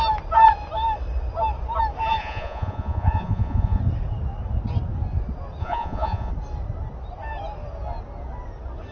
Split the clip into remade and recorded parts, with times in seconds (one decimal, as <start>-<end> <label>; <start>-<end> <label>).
0.0-2.2 recorded; 2.2-3.8 remade; 3.8-5.6 recorded; 5.6-6.3 remade; 6.3-8.9 recorded